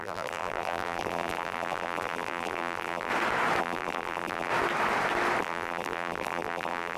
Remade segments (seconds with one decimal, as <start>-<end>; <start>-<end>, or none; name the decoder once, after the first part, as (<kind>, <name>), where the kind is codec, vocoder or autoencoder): 0.0-3.1 (vocoder, BigVGAN v2); 3.6-4.5; 5.4-7.0